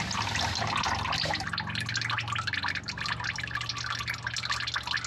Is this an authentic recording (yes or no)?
yes